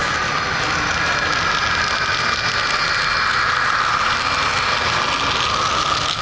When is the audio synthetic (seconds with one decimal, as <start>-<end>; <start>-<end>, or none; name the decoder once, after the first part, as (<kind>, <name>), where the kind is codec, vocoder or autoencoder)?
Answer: none